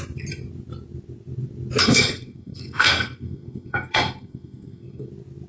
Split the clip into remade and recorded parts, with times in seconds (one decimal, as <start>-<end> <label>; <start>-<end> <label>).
0.0-1.8 recorded; 1.8-5.1 remade; 5.1-5.5 recorded